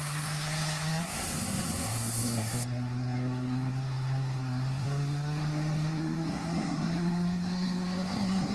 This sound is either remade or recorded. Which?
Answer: remade